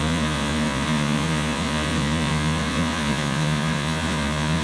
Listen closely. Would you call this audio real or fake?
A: fake